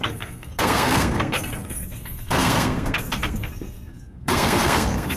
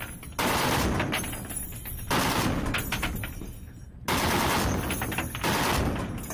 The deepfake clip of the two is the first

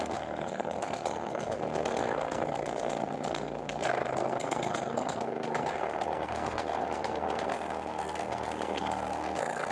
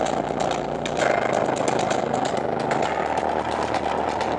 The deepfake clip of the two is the first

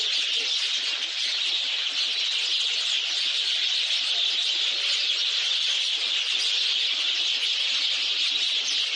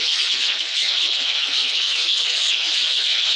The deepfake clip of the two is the second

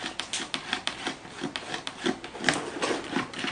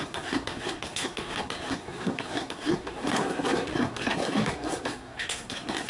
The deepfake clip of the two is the second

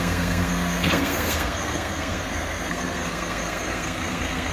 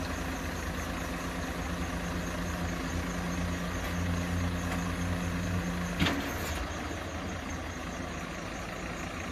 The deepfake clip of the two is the first